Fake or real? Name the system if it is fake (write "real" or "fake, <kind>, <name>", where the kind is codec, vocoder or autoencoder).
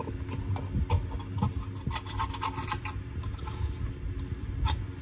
real